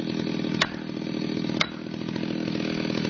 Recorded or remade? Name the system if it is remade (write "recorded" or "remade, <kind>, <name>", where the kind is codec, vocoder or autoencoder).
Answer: recorded